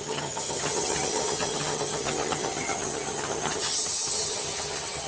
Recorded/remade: remade